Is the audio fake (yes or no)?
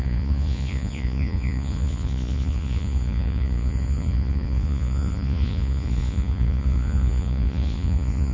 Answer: yes